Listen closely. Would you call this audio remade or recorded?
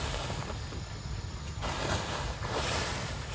recorded